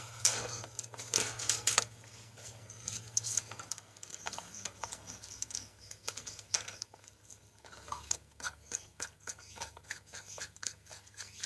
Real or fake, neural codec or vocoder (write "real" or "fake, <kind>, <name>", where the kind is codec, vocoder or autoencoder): fake, codec, SNAC